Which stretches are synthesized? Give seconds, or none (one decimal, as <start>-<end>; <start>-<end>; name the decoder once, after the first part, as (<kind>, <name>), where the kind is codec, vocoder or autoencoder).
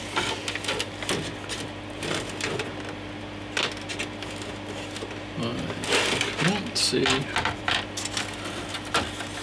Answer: none